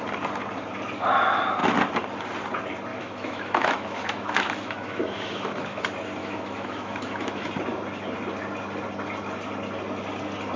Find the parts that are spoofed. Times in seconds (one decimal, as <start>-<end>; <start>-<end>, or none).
2.9-5.8; 6.2-7.5